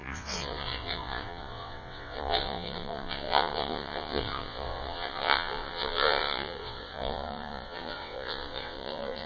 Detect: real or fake fake